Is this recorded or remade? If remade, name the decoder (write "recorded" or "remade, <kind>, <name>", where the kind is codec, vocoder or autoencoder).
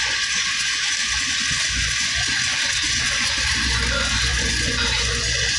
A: remade, vocoder, Vocos